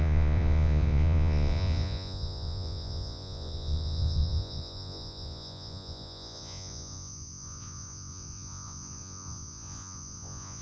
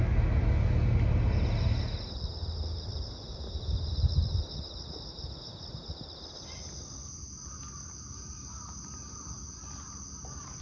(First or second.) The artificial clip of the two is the first